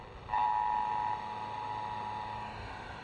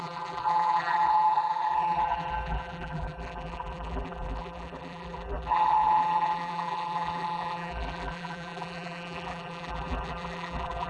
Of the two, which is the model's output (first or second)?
second